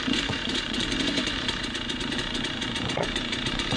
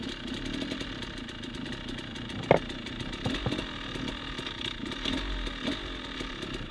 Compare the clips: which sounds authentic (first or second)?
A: second